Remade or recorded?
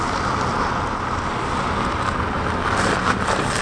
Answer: recorded